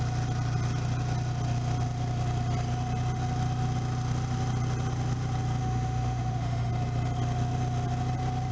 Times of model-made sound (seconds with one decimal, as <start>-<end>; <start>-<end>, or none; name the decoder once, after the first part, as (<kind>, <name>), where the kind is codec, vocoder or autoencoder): 5.6-6.7 (autoencoder, DAC-VAE)